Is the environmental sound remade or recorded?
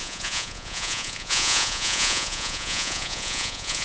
remade